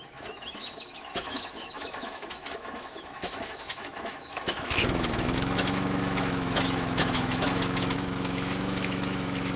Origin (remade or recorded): remade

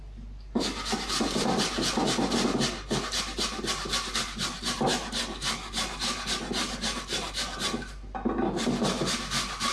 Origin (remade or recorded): recorded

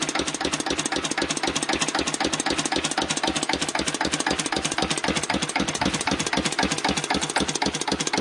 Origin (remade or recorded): recorded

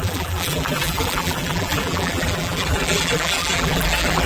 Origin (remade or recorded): remade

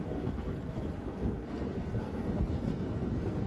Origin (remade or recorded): remade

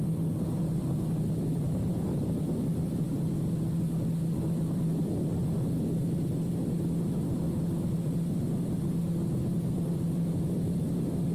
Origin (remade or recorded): recorded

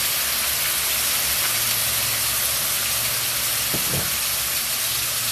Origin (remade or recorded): recorded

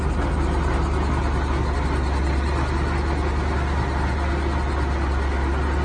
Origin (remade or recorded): recorded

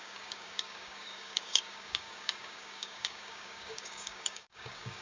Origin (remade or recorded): remade